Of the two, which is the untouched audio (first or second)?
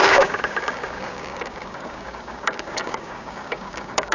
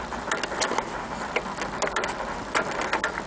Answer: second